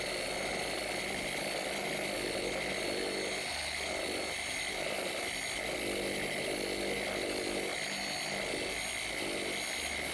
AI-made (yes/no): no